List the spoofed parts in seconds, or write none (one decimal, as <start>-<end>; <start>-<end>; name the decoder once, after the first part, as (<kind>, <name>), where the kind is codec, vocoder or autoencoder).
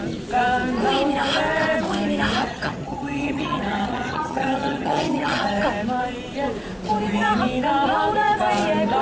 2.4-5.6 (vocoder, HiFi-GAN)